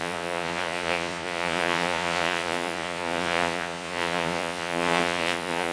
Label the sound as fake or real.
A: fake